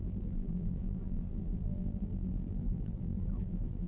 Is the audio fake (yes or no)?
yes